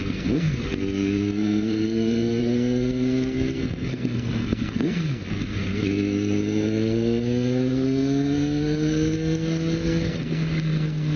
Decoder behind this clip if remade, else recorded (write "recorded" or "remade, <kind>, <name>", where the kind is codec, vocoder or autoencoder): remade, codec, SNAC